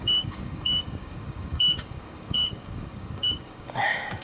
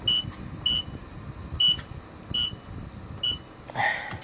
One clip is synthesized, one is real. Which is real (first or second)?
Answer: second